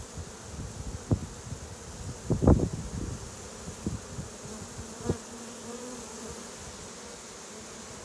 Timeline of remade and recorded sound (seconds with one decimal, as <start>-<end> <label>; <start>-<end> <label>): 0.0-8.0 recorded